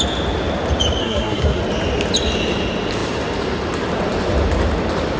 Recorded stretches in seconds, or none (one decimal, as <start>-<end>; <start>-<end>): 0.0-1.0; 1.6-5.2